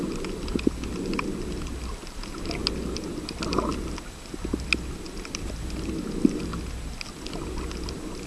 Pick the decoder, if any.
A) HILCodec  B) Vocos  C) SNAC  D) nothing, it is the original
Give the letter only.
D